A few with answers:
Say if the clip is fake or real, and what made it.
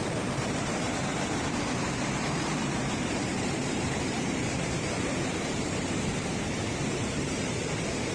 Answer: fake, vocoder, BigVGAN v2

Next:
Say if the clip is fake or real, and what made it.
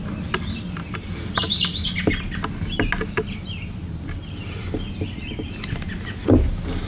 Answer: real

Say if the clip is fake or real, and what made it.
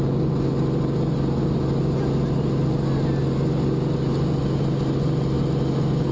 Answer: real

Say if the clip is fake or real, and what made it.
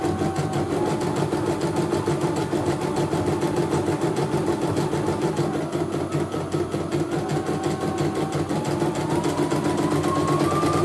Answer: real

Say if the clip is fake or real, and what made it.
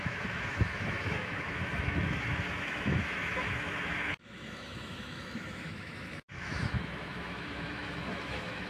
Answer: fake, autoencoder, DAC-VAE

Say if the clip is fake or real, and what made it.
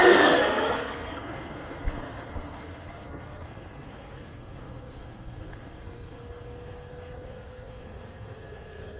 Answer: fake, codec, SNAC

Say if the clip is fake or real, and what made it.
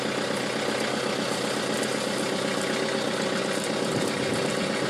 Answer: real